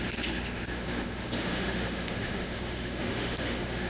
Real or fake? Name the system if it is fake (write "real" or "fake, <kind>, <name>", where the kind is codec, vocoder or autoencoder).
fake, autoencoder, DAC-VAE